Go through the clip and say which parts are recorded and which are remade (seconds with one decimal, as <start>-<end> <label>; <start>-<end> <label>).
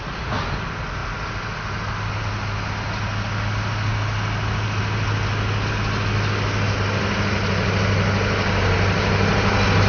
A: 0.0-9.9 recorded